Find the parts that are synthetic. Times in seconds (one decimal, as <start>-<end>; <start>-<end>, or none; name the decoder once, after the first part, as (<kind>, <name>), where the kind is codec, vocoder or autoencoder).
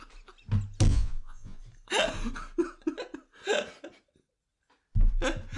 0.9-1.6 (vocoder, Vocos)